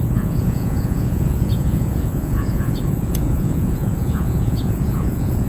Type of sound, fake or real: fake